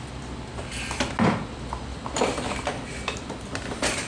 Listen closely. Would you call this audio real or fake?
real